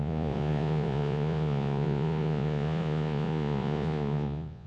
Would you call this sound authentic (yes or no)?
no